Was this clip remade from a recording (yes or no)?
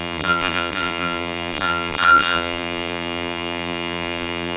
yes